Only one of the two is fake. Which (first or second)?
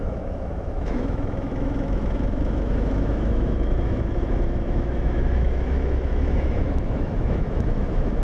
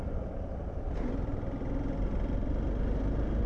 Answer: first